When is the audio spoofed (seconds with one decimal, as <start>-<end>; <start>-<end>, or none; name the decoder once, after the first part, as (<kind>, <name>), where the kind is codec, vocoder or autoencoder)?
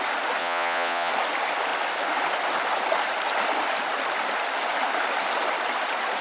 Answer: 0.4-1.1 (vocoder, WaveNeXt)